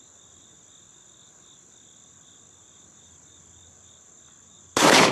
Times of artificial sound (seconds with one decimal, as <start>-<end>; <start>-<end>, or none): none